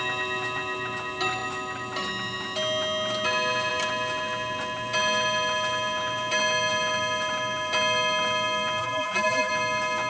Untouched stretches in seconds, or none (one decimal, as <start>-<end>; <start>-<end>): 0.0-8.8; 9.5-10.1

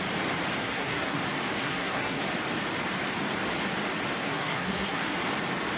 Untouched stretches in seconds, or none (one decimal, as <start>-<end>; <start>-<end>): 0.0-0.6; 1.2-1.6; 2.2-4.2; 5.2-5.8

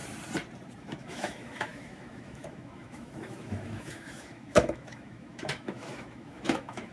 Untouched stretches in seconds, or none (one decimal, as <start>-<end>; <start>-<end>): 0.0-0.8

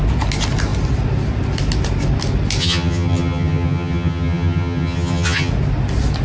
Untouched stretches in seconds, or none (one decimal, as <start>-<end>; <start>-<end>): 0.0-2.6; 5.5-6.2

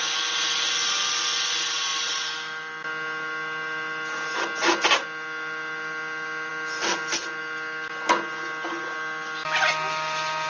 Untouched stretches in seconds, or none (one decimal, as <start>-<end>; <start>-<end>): 0.0-10.5